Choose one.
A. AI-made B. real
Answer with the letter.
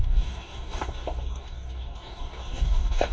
A